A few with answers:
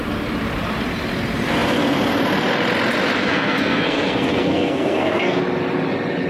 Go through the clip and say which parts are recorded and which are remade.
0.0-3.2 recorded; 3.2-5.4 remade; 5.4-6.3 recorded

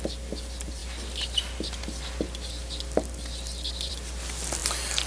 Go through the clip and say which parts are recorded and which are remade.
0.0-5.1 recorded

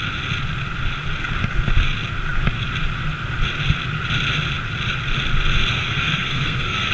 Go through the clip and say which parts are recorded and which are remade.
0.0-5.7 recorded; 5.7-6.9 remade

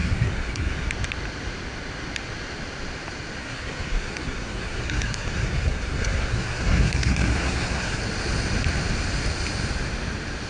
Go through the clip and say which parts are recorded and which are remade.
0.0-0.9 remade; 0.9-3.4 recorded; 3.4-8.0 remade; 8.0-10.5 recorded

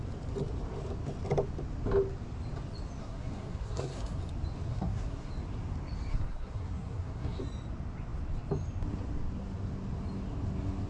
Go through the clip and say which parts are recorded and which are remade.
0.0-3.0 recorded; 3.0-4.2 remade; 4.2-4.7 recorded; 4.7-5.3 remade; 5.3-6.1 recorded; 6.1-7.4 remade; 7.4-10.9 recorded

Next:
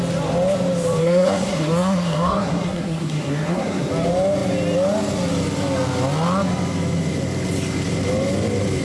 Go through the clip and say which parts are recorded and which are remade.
0.0-1.0 recorded; 1.0-3.9 remade; 3.9-8.8 recorded